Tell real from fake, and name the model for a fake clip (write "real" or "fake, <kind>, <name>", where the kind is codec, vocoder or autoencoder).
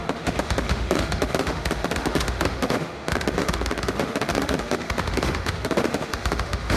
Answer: fake, autoencoder, DAC-VAE